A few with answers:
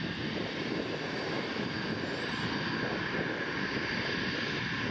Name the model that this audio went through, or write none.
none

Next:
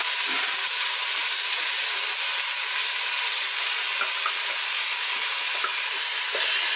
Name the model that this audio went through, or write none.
none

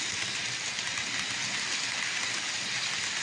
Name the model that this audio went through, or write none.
none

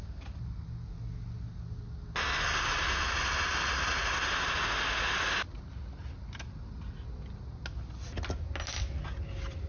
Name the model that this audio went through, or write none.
none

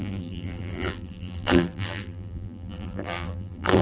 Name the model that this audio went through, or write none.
vocoder, BigVGAN v2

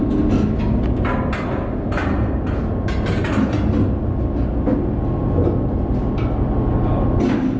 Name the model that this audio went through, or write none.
none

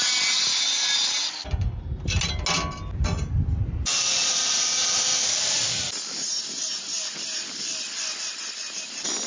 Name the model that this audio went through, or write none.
none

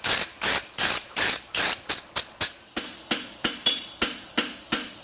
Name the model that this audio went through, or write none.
none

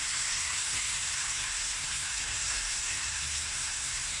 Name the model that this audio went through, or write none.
codec, SNAC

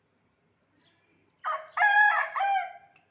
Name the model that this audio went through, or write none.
none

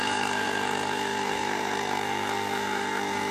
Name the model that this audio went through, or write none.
codec, SNAC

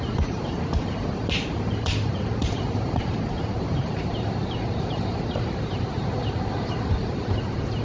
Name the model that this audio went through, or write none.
vocoder, BigVGAN v2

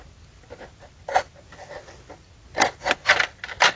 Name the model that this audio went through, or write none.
none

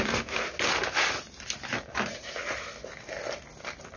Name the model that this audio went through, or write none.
none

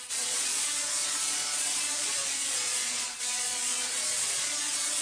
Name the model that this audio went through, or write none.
vocoder, Vocos